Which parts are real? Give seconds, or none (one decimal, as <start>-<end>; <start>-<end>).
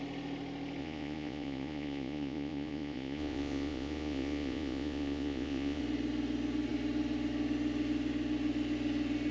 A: 0.0-0.8; 5.8-9.3